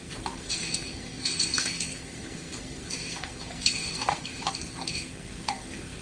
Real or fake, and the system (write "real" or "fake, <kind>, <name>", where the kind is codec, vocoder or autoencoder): fake, codec, SNAC